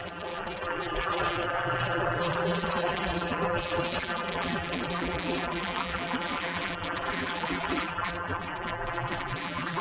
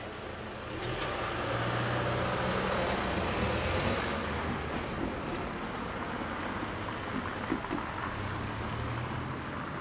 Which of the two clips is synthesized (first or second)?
first